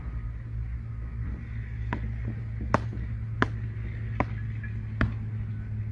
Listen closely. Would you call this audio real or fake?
real